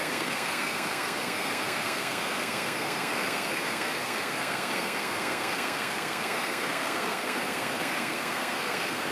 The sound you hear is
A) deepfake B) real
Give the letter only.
A